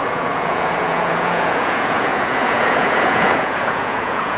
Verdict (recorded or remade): remade